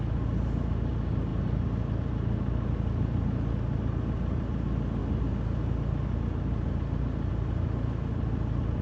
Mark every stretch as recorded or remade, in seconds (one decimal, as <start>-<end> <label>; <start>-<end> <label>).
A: 0.0-8.8 recorded